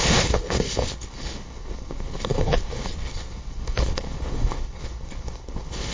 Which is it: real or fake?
fake